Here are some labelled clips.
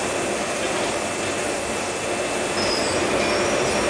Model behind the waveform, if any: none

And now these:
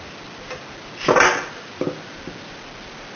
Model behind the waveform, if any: none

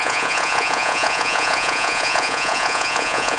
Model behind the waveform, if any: vocoder, Vocos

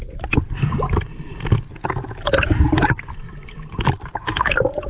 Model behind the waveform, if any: none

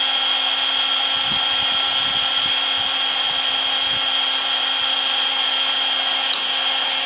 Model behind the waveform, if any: none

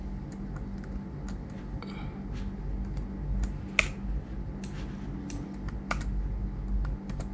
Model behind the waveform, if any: none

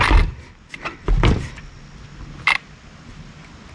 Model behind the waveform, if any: none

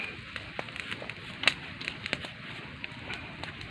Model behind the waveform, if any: none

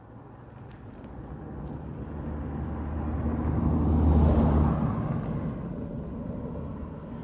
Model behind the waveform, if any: none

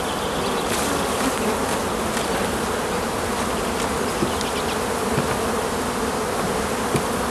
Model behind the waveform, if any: none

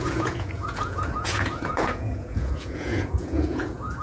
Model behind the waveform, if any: vocoder, Vocos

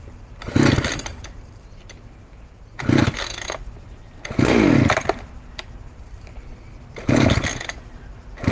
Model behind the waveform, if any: none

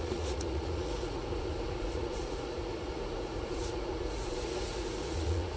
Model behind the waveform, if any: vocoder, Vocos